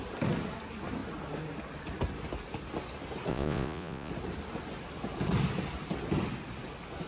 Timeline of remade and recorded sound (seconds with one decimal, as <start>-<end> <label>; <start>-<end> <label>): 0.0-3.3 recorded; 3.3-4.1 remade; 4.1-7.1 recorded